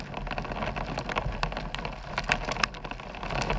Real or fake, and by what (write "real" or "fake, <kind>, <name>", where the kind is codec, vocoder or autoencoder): real